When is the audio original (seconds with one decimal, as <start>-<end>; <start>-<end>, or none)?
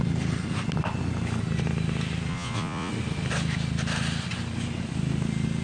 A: 0.0-2.3; 2.9-5.6